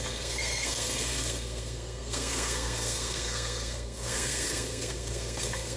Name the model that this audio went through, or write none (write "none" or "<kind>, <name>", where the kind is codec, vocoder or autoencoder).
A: codec, SNAC